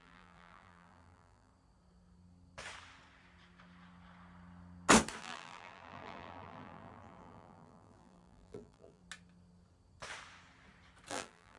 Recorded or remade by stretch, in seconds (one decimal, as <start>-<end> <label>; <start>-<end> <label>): 0.0-1.5 remade; 1.5-5.2 recorded; 5.2-9.0 remade; 9.0-11.1 recorded; 11.1-11.6 remade